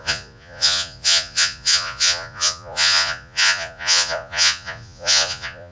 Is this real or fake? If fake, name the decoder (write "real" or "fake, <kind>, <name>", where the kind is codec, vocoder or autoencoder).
fake, vocoder, Vocos